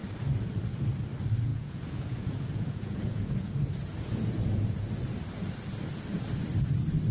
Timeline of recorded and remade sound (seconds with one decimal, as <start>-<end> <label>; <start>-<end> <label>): 0.0-1.5 recorded; 1.5-4.9 remade; 4.9-7.1 recorded